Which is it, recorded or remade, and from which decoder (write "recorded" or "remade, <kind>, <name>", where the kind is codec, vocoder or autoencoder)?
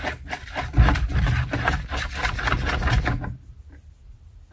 recorded